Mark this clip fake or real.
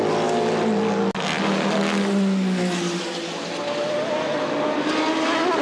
real